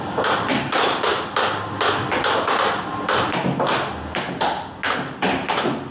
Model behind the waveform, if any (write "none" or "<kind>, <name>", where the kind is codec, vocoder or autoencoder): none